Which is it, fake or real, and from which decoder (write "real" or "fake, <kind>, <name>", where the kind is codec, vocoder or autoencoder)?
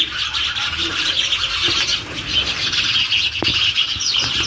real